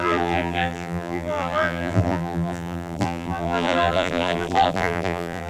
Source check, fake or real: fake